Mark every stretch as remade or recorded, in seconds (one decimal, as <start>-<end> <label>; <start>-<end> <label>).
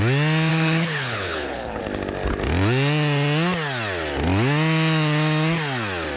0.0-0.5 recorded; 0.5-1.8 remade; 1.8-6.2 recorded